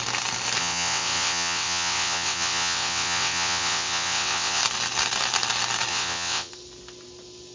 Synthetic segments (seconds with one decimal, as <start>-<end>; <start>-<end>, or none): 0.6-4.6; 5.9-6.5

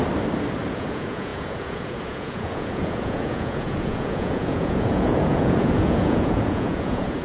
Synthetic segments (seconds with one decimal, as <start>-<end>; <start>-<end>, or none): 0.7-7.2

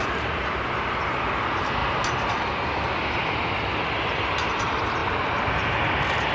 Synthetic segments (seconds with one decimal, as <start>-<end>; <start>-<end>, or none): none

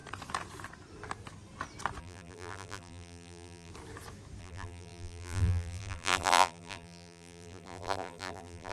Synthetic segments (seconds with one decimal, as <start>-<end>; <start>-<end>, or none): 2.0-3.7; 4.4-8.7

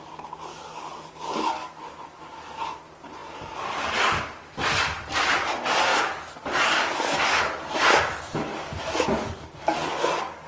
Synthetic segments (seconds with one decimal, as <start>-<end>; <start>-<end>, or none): 0.5-2.6; 5.9-7.4; 8.5-10.5